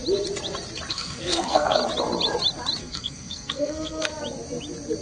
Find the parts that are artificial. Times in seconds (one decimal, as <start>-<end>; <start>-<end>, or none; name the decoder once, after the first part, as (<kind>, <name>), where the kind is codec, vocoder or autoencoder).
0.9-1.8 (codec, SNAC); 2.8-4.1